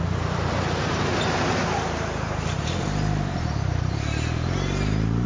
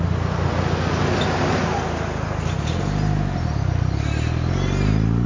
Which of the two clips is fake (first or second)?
first